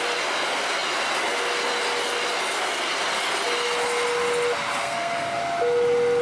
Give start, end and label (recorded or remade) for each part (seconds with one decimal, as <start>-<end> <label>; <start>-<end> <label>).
0.0-4.8 recorded; 4.8-5.4 remade; 5.4-6.2 recorded